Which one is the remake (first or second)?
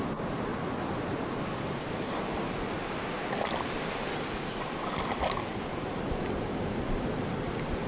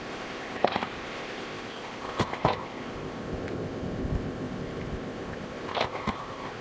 second